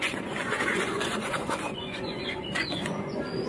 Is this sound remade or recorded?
remade